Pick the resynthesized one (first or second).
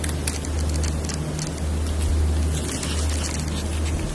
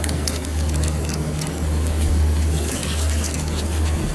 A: second